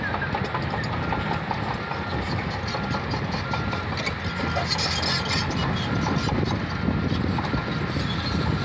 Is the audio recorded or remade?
recorded